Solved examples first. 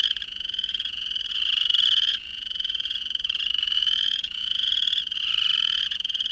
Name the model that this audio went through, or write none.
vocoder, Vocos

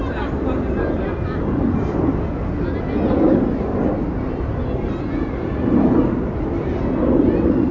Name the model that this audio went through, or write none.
none